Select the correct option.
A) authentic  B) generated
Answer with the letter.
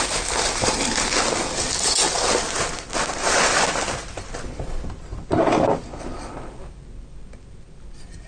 A